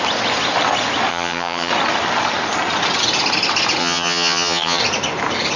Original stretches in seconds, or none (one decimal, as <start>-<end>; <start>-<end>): 0.0-1.1; 1.7-3.8; 4.8-5.6

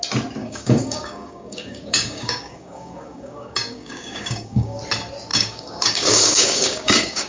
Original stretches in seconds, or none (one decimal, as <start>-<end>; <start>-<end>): 0.0-0.4; 4.8-5.3

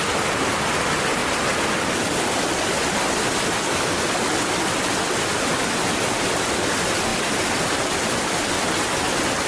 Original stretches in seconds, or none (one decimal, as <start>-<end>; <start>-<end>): 0.0-7.1; 8.5-9.5

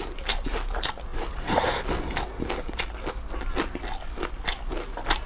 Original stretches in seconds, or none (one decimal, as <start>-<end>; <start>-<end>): 0.0-1.1; 1.7-5.3

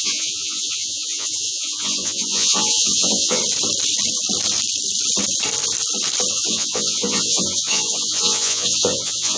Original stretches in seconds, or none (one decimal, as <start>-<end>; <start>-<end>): 3.4-6.3

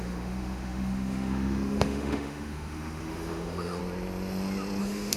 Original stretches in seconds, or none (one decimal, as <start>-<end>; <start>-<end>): 3.8-4.8

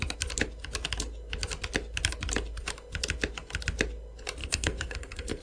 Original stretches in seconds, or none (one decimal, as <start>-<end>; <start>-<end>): 0.0-4.4